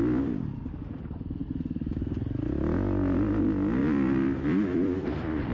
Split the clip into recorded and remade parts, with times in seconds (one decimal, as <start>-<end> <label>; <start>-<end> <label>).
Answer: 0.0-1.4 recorded; 1.4-1.9 remade; 1.9-3.8 recorded; 3.8-5.5 remade